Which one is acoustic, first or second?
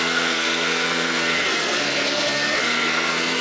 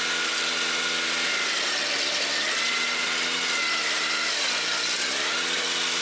second